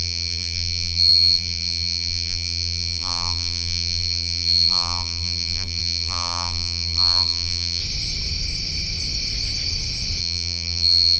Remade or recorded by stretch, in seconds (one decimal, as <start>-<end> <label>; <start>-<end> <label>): 0.0-7.8 remade; 7.8-10.2 recorded; 10.2-11.2 remade